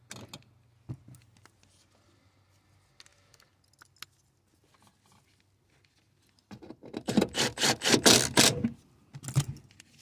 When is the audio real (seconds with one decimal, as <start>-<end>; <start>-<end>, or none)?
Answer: 0.0-10.0